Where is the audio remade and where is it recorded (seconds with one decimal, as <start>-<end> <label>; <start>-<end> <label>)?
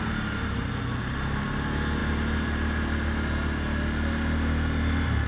0.0-5.3 recorded